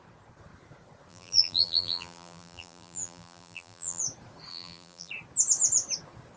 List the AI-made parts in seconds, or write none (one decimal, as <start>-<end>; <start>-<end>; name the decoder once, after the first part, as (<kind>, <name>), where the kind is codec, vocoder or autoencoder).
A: 1.1-4.0 (vocoder, BigVGAN v2); 4.5-5.1